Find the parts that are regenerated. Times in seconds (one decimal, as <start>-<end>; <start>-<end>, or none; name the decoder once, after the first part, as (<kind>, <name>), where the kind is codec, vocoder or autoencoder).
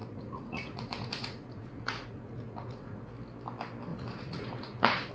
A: 0.0-3.1 (vocoder, Vocos); 3.9-5.1